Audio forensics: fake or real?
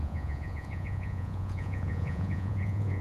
fake